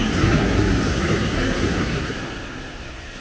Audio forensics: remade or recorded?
remade